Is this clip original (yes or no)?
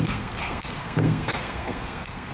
no